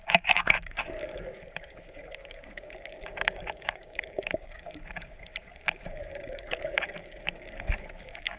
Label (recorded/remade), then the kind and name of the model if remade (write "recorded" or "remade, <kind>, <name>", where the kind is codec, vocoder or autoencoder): remade, codec, DAC